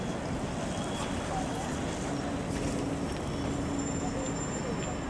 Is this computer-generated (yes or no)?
no